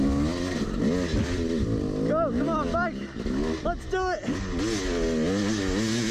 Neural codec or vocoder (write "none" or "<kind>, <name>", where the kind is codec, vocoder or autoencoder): none